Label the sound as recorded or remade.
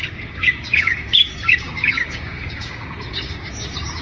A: remade